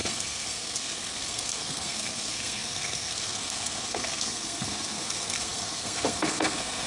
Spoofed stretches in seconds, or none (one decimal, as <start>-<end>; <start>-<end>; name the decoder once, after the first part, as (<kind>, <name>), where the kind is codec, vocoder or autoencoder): 0.0-6.9 (codec, SNAC)

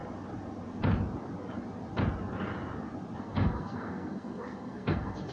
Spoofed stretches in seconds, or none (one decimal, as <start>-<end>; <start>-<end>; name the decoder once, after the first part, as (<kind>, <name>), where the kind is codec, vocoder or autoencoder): 3.2-5.3 (codec, SNAC)

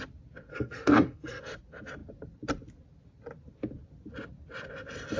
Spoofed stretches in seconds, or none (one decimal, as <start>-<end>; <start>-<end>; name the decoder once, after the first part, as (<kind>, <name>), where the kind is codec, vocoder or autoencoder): 0.5-1.4 (codec, SNAC)